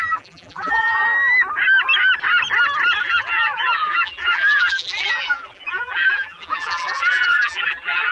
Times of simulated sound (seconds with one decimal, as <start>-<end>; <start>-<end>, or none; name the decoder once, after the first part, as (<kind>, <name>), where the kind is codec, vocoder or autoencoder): 0.0-1.0 (vocoder, BigVGAN v2); 3.0-8.1